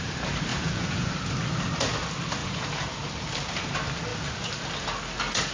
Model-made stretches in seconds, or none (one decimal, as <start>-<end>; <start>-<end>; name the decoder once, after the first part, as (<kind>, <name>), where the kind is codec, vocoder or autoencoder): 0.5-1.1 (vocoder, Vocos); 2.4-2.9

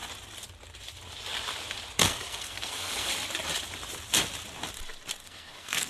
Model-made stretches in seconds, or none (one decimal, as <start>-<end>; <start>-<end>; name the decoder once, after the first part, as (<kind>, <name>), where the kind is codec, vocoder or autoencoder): 2.0-3.1 (codec, SNAC); 5.2-5.9

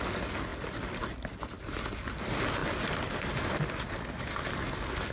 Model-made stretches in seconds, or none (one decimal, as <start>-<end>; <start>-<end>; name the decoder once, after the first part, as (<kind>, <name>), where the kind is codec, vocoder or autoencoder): none